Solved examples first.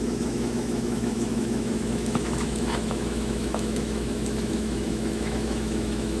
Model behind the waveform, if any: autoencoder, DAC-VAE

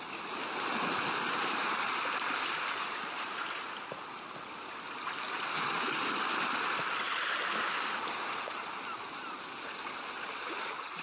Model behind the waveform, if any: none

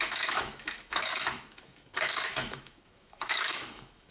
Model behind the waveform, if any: autoencoder, DAC-VAE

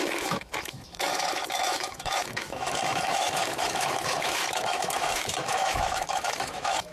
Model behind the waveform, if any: autoencoder, DAC-VAE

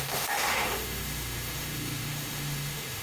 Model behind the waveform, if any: autoencoder, DAC-VAE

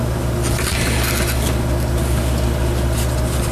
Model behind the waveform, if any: none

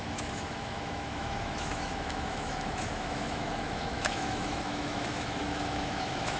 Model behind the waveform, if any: autoencoder, DAC-VAE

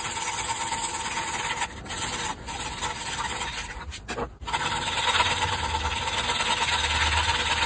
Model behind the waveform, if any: none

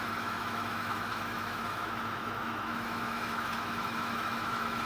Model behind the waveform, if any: autoencoder, DAC-VAE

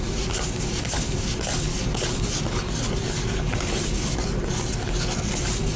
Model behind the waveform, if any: none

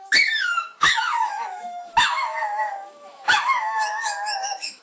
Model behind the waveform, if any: autoencoder, DAC-VAE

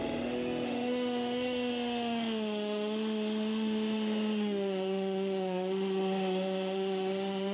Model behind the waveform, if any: autoencoder, DAC-VAE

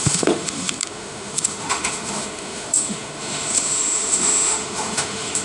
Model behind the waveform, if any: autoencoder, DAC-VAE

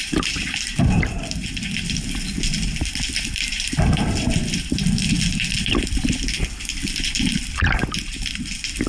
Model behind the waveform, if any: none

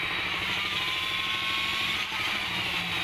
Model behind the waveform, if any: none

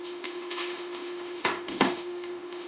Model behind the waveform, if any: autoencoder, DAC-VAE